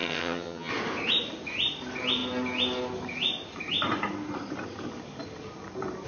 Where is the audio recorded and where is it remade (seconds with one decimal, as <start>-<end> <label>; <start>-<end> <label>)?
0.0-0.7 remade; 0.7-6.1 recorded